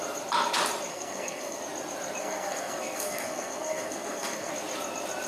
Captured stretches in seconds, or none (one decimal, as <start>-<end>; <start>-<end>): 0.0-0.9; 1.6-2.2; 4.5-5.3